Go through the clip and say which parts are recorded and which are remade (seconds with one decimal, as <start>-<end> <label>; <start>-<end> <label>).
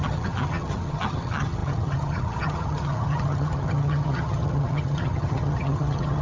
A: 0.0-6.2 remade